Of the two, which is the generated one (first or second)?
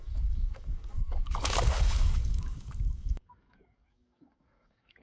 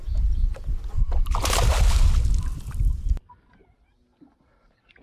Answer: first